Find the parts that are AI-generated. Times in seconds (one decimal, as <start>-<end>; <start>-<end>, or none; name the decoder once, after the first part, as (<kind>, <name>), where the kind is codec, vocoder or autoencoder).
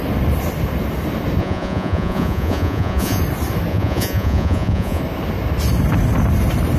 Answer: 1.4-3.2 (vocoder, Vocos); 3.7-5.0